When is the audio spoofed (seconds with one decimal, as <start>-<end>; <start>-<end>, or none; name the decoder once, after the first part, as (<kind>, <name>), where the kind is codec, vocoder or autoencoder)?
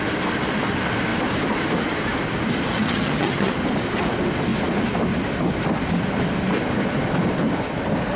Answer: 2.7-3.5 (vocoder, HiFi-GAN)